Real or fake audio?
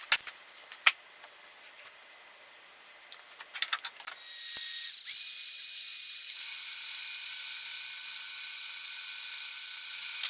real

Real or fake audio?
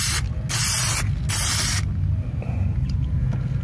real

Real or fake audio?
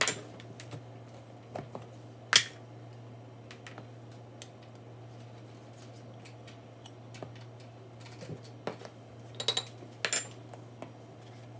real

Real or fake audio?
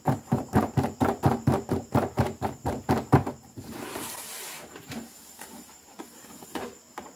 fake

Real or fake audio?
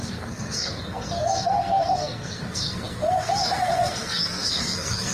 fake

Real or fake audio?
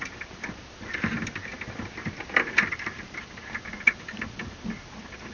real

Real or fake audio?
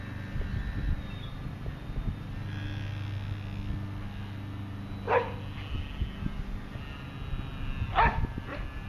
real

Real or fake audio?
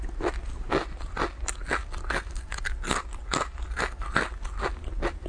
real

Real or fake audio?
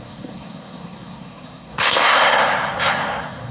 fake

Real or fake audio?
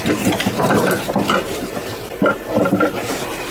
fake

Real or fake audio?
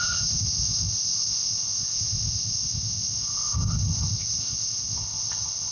fake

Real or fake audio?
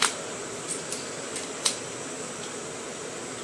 real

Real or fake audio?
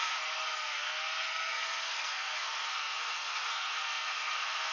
fake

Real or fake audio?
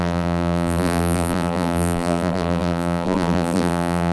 fake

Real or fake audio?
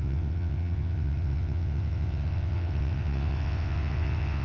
fake